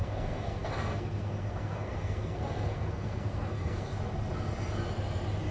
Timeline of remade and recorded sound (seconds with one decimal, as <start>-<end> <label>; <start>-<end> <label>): 0.0-3.9 remade; 3.9-5.5 recorded